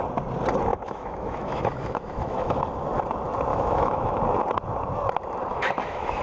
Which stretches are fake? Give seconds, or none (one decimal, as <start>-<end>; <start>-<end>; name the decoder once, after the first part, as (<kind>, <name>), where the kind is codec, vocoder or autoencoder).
0.7-2.6 (autoencoder, DAC-VAE); 3.5-4.2; 5.5-6.2